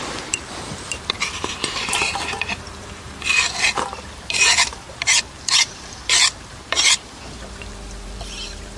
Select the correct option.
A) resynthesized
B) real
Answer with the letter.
A